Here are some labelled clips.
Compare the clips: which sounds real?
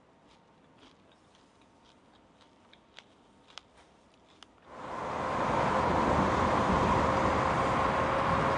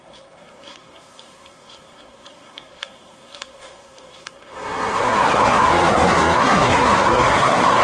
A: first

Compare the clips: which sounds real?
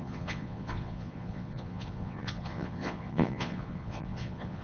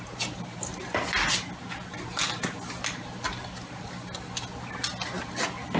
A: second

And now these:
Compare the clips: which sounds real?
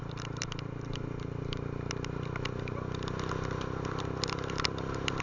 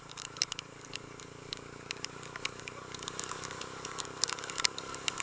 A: first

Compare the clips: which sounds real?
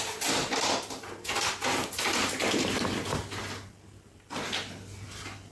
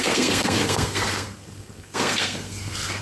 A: first